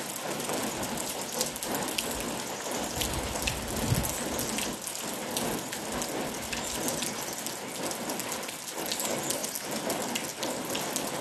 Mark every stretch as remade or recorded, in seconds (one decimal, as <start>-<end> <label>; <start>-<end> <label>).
0.0-11.2 recorded